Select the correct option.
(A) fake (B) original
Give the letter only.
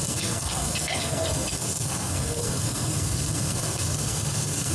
A